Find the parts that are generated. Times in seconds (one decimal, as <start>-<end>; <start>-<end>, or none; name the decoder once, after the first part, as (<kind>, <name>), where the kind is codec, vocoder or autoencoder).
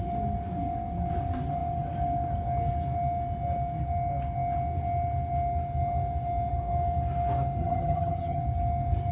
7.6-8.4 (vocoder, HiFi-GAN)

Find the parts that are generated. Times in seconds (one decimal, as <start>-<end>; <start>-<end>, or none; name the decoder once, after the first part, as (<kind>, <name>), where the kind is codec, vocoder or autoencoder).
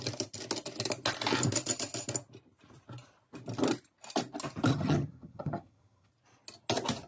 4.7-6.1 (vocoder, HiFi-GAN)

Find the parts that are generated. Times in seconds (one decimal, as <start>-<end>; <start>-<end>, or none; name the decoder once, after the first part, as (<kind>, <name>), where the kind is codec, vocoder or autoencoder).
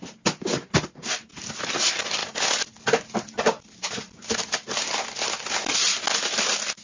none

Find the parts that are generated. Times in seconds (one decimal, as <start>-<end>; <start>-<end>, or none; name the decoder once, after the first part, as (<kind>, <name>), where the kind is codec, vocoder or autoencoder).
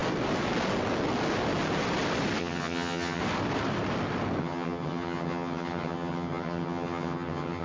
2.4-3.2 (vocoder, HiFi-GAN); 4.4-7.6